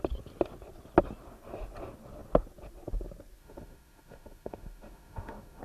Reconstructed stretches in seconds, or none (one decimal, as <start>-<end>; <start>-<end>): 3.4-5.6